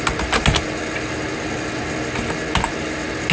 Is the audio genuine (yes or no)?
yes